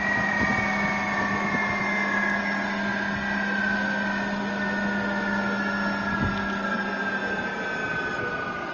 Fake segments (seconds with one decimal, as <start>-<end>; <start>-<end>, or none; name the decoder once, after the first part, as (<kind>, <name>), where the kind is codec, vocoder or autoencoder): none